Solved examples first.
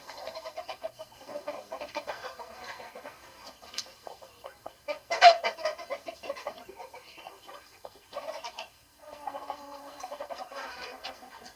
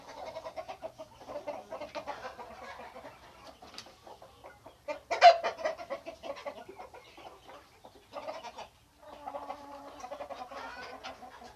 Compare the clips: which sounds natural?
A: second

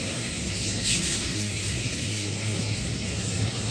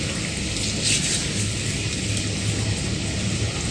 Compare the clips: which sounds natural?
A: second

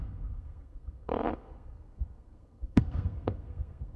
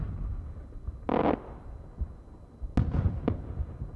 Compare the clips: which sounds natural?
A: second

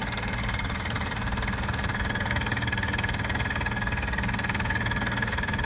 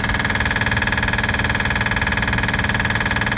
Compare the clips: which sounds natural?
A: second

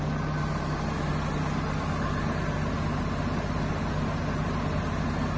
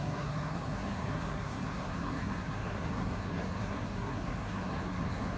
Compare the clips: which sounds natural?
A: first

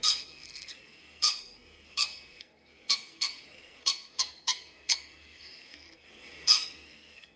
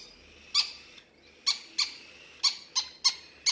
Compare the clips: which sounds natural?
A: second